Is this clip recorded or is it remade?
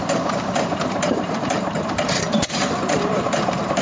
remade